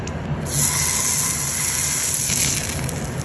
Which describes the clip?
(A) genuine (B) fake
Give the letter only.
A